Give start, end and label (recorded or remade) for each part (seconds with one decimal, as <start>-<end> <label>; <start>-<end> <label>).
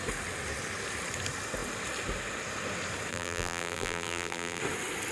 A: 0.0-3.1 recorded; 3.1-4.6 remade; 4.6-5.1 recorded